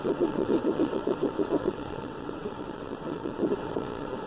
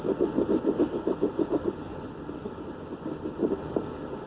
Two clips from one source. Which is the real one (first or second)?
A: second